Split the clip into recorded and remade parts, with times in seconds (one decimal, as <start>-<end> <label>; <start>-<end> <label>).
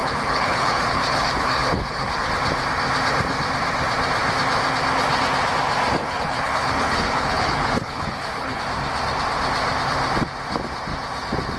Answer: 0.0-2.3 remade; 2.3-6.0 recorded; 6.0-8.6 remade; 8.6-11.6 recorded